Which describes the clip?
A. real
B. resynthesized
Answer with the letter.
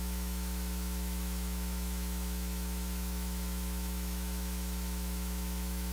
B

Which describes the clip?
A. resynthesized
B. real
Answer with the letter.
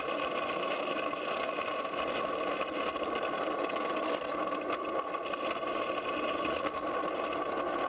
B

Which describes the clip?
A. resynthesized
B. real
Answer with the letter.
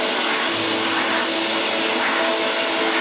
B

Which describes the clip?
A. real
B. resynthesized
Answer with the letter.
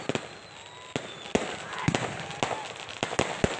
A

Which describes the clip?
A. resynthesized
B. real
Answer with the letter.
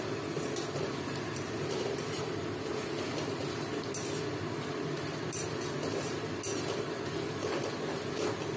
B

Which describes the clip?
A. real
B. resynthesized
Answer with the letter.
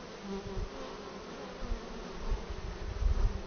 A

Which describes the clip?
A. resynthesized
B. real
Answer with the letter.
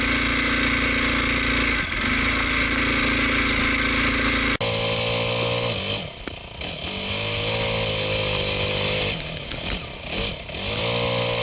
B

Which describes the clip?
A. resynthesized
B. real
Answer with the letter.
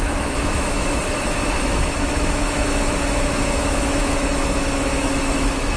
A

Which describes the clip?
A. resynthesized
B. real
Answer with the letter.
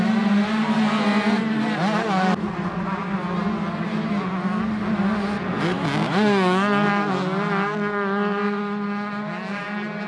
B